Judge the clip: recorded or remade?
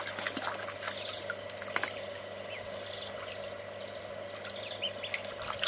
recorded